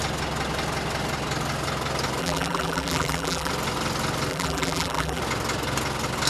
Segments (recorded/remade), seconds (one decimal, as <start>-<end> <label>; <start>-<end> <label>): 0.0-2.2 recorded; 2.2-3.5 remade; 3.5-4.3 recorded; 4.3-5.2 remade; 5.2-6.3 recorded